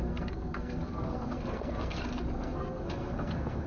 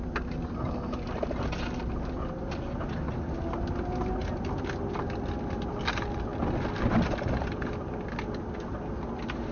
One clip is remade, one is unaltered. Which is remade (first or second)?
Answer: first